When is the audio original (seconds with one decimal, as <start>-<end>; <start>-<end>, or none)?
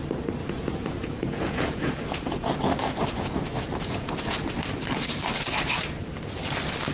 0.0-0.4; 4.5-6.9